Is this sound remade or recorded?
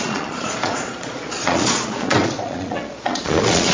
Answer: remade